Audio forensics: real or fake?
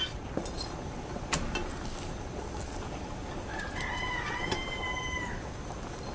real